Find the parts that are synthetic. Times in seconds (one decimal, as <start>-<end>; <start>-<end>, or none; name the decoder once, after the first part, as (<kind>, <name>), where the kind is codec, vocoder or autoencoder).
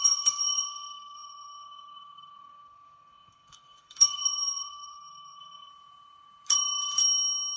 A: 0.0-5.7 (codec, SNAC)